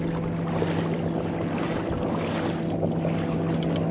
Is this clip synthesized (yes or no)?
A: no